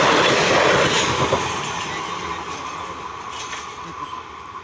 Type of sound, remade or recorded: recorded